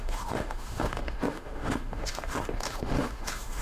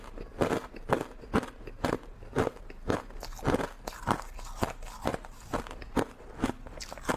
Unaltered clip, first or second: second